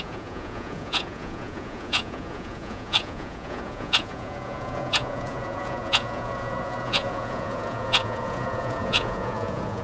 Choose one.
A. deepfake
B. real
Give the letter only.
A